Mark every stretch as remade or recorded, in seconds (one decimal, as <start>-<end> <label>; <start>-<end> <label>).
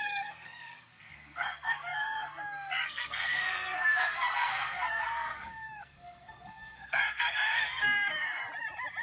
0.0-8.4 remade; 8.4-9.0 recorded